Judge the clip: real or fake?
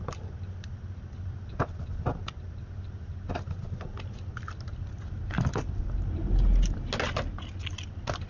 real